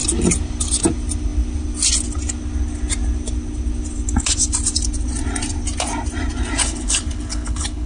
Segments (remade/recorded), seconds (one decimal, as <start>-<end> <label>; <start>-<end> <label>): 0.0-6.6 recorded; 6.6-7.9 remade